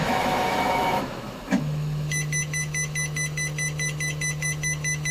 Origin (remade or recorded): remade